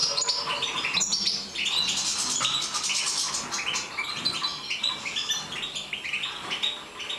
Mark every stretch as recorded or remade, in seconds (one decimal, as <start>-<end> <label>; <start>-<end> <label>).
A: 0.0-1.0 remade; 1.0-7.2 recorded